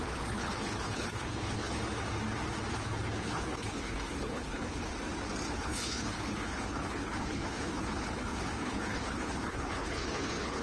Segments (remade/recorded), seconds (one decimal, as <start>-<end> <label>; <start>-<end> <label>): 0.0-1.8 remade; 1.8-2.7 recorded; 2.7-4.9 remade; 4.9-5.5 recorded; 5.5-10.6 remade